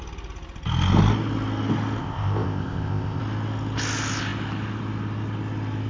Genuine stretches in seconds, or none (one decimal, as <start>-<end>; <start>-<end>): 0.0-2.0; 3.2-5.9